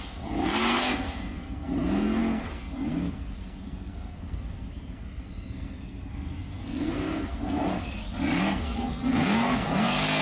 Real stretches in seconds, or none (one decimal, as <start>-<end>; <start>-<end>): 7.7-8.4